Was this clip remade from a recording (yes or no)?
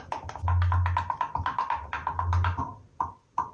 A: no